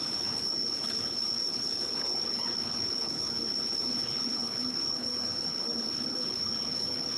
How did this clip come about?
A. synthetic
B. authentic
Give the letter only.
A